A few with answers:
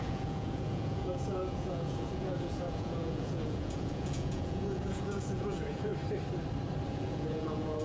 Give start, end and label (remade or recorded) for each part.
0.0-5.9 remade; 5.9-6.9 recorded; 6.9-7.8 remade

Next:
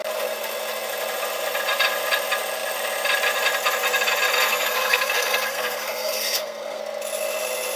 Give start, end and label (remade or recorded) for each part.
0.0-4.5 recorded; 4.5-6.8 remade; 6.8-7.8 recorded

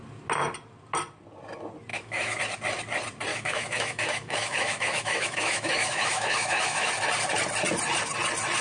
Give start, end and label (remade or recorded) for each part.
0.0-1.9 recorded; 1.9-2.4 remade; 2.4-3.3 recorded; 3.3-6.9 remade; 6.9-8.6 recorded

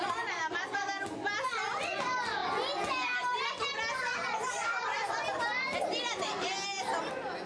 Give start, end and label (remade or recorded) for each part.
0.0-4.1 recorded; 4.1-5.4 remade; 5.4-7.5 recorded